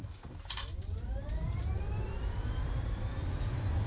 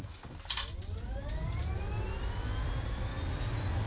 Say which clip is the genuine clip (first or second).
second